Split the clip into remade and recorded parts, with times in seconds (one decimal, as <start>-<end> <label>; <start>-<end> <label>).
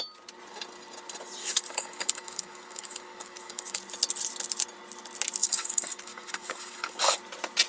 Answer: 0.0-1.4 recorded; 1.4-3.8 remade; 3.8-5.4 recorded; 5.4-7.2 remade; 7.2-7.7 recorded